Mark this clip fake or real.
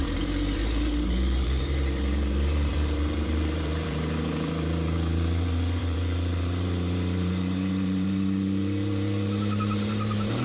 fake